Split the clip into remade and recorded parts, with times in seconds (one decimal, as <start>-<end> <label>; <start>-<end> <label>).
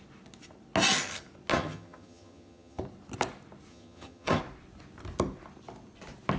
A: 0.0-1.5 recorded; 1.5-2.8 remade; 2.8-3.7 recorded; 3.7-4.4 remade; 4.4-6.4 recorded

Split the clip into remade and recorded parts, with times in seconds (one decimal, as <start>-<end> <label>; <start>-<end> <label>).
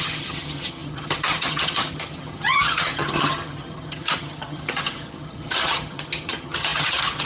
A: 0.0-7.2 remade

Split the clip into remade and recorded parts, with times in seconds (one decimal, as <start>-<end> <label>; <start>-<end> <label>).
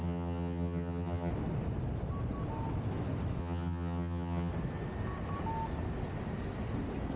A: 0.0-1.3 remade; 1.3-3.4 recorded; 3.4-4.5 remade; 4.5-7.2 recorded